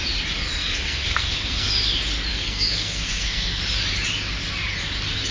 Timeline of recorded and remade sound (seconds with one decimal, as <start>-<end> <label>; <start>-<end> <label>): 0.0-0.6 recorded; 0.6-1.7 remade; 1.7-2.3 recorded; 2.3-3.6 remade; 3.6-5.3 recorded